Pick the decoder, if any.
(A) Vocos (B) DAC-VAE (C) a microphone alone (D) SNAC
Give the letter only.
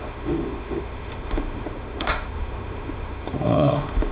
B